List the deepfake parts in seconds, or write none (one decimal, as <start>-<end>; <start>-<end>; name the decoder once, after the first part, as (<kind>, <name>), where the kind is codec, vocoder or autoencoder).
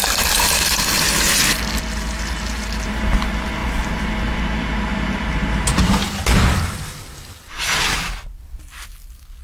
none